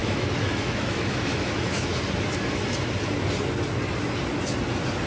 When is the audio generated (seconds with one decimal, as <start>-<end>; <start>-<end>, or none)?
0.0-1.9